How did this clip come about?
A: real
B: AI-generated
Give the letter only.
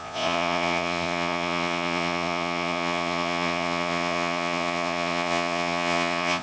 B